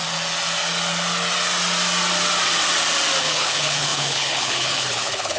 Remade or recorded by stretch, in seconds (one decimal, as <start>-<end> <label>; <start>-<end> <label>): 0.0-3.2 recorded; 3.2-5.4 remade